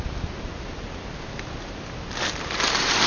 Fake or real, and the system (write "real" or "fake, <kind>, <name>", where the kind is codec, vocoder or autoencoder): real